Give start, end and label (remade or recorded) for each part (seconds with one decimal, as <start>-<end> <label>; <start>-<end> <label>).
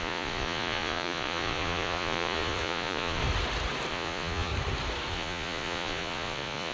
0.0-3.2 remade; 3.2-3.9 recorded; 3.9-4.5 remade; 4.5-5.1 recorded; 5.1-6.7 remade